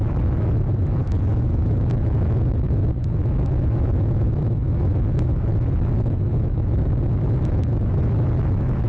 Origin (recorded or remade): remade